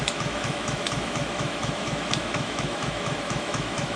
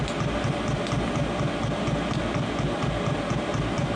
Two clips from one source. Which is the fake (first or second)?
first